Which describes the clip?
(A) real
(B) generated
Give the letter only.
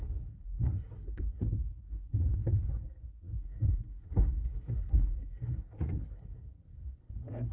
B